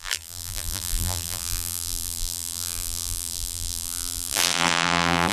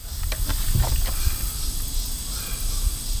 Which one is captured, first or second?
second